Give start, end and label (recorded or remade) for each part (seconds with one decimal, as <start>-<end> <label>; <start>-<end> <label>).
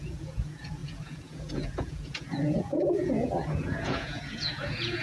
0.0-5.0 remade